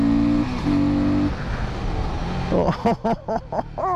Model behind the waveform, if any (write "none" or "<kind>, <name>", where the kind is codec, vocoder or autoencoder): none